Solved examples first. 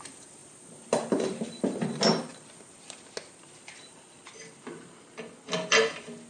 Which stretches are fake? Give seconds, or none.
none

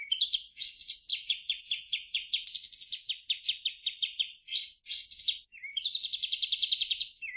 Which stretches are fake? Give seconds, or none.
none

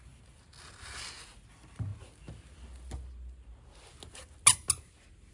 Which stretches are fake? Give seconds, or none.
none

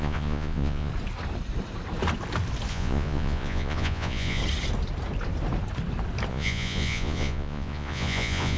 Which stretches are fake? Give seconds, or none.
0.0-0.9 (vocoder, Vocos); 2.7-4.4; 6.3-8.6

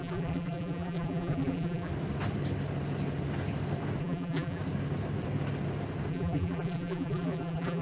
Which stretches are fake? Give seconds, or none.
0.0-1.9 (vocoder, BigVGAN v2); 4.0-4.6; 6.1-7.8

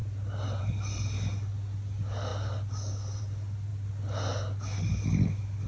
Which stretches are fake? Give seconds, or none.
none